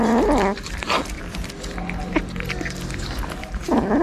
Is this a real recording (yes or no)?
yes